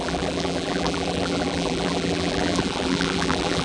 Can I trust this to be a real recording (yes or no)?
no